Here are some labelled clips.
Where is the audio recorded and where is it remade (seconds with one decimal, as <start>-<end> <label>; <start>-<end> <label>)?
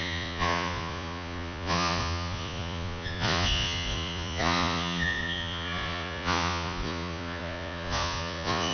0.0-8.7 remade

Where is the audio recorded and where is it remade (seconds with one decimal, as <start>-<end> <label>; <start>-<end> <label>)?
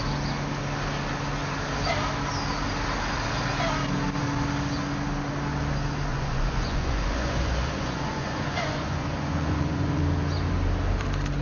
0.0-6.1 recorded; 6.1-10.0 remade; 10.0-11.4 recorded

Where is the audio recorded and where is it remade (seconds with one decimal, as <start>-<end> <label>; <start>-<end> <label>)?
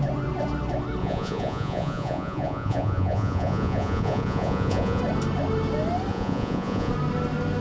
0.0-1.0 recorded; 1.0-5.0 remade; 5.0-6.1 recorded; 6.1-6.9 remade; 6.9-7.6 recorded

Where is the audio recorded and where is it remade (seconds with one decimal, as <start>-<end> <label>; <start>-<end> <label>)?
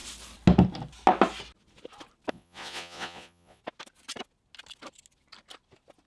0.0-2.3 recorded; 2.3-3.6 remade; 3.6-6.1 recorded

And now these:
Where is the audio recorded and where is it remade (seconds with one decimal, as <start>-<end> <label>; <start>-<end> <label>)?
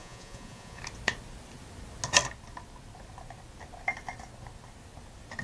0.0-0.8 remade; 0.8-5.4 recorded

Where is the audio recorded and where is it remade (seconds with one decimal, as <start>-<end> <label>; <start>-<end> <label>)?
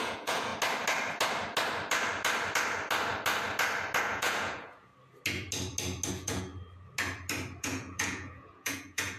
0.0-0.5 remade; 0.5-4.0 recorded; 4.0-4.9 remade; 4.9-6.1 recorded; 6.1-6.5 remade; 6.5-7.6 recorded; 7.6-9.2 remade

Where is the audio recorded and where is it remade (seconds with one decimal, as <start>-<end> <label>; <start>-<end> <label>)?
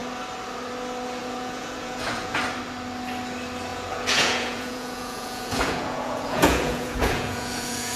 0.0-1.2 recorded; 1.2-2.4 remade; 2.4-3.7 recorded; 3.7-8.0 remade